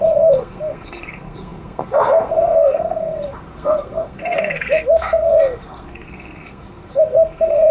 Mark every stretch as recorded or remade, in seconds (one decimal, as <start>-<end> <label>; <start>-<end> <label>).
0.0-7.7 remade